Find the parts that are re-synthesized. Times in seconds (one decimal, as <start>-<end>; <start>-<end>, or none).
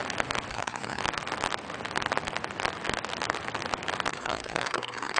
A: 0.5-1.0; 4.1-5.2